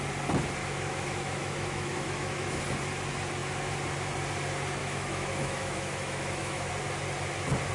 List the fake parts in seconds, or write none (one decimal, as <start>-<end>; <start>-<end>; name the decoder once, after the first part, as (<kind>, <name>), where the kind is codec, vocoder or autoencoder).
0.6-2.6 (autoencoder, DAC-VAE); 4.8-6.7